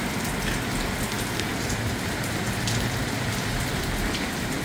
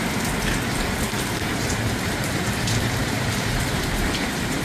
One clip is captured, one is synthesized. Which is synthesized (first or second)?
second